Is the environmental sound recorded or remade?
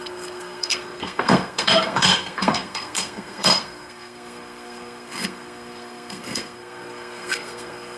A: remade